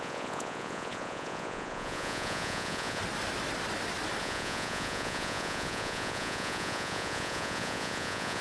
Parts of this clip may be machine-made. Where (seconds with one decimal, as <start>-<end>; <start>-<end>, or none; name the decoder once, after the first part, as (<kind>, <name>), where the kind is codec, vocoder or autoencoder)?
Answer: 0.0-3.0 (vocoder, Vocos); 4.2-8.4